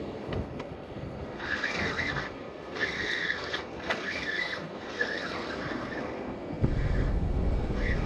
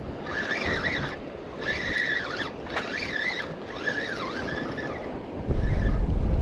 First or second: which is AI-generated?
first